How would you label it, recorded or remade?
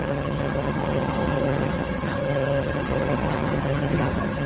remade